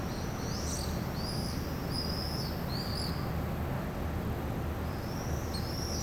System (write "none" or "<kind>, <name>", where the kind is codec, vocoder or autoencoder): none